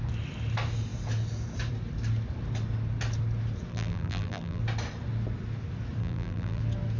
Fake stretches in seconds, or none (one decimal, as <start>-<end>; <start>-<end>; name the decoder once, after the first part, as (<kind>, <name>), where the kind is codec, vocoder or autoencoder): 3.7-4.6 (vocoder, BigVGAN v2); 6.0-6.6